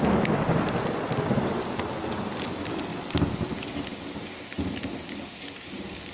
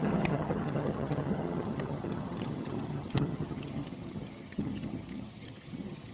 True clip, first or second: first